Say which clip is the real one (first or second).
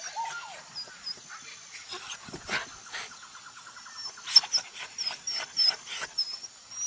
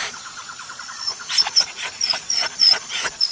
first